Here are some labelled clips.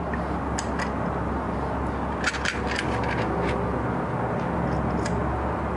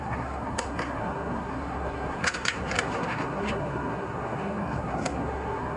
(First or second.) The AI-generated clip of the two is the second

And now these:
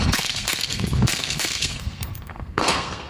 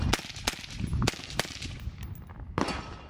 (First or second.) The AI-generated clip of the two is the first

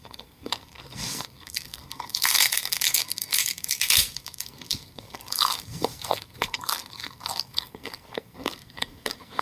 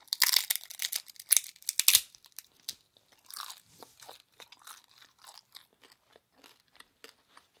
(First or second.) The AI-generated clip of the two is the first